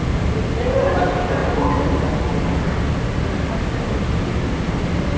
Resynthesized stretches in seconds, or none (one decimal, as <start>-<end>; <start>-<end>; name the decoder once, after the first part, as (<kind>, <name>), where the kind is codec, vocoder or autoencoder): none

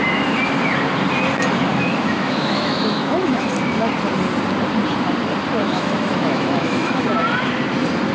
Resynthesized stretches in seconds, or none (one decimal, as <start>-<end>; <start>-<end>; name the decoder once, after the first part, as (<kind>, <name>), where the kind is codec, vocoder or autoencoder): 1.7-3.5 (autoencoder, DAC-VAE); 5.6-7.0

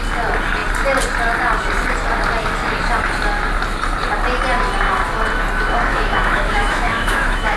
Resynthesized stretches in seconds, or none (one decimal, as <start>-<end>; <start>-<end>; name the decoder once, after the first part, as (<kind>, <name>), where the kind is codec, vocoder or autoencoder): 5.9-7.6 (autoencoder, DAC-VAE)

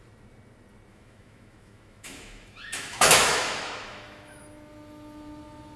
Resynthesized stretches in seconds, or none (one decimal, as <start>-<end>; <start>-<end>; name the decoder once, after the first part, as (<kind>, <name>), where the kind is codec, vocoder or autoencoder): 0.9-4.4 (autoencoder, DAC-VAE)

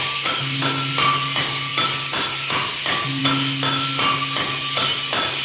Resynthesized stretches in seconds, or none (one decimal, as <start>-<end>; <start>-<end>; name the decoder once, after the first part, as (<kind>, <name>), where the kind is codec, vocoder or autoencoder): none